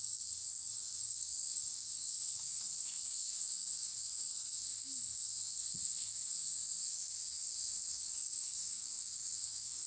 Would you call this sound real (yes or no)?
no